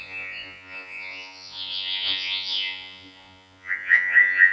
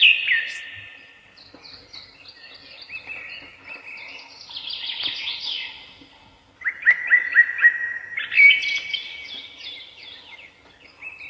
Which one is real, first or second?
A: second